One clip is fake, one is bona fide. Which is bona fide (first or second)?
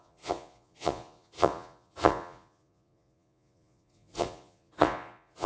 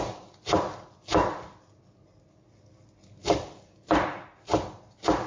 second